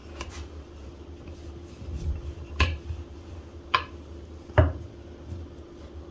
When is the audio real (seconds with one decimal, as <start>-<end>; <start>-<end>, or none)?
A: 0.0-6.1